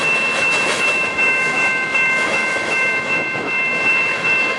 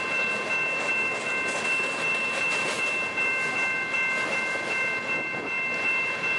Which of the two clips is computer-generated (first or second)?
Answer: first